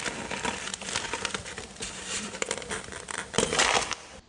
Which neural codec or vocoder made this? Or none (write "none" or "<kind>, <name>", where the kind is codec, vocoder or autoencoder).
vocoder, BigVGAN v2